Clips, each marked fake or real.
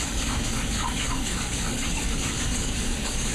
fake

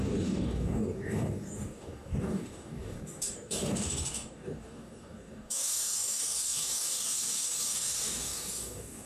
fake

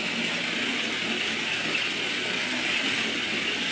real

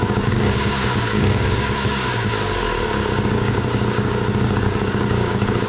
fake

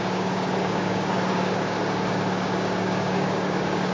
fake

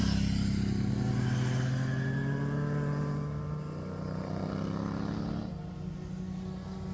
real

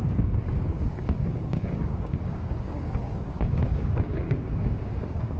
fake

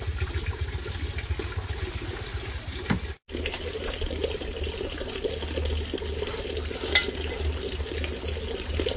real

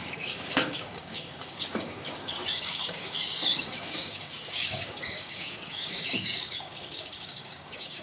fake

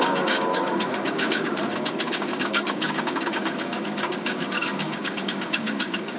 fake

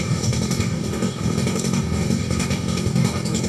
fake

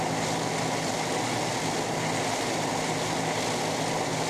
real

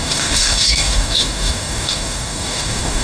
fake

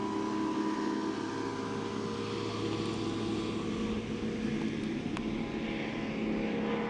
real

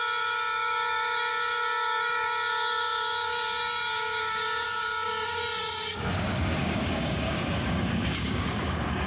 fake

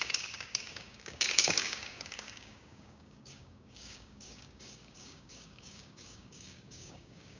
fake